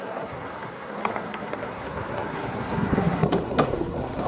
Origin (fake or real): fake